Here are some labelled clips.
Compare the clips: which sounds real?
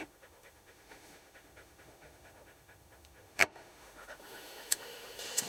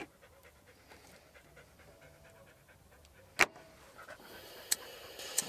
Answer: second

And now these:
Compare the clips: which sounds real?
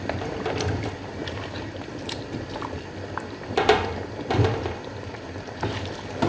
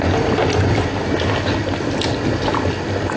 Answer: second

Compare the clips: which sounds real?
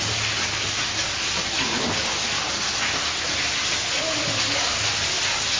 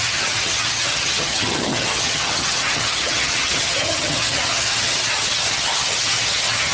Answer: first